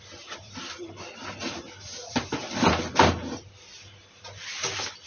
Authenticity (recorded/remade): remade